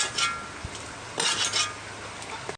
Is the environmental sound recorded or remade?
recorded